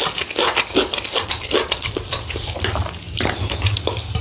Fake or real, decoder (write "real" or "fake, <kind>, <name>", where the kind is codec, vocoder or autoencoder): real